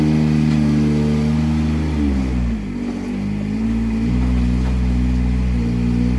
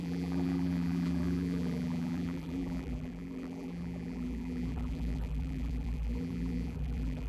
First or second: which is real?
first